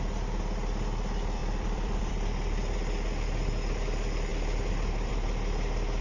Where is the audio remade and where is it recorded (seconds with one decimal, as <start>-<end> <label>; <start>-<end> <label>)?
0.0-1.4 recorded; 1.4-2.1 remade; 2.1-6.0 recorded